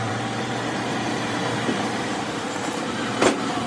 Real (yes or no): no